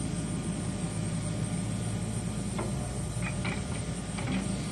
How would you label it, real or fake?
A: real